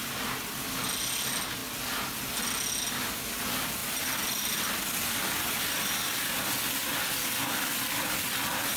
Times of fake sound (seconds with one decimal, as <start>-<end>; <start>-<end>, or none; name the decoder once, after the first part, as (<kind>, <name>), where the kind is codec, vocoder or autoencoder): none